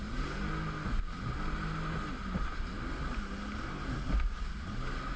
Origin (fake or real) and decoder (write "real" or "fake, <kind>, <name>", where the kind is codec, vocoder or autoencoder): real